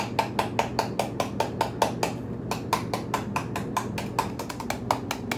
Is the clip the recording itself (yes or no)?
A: yes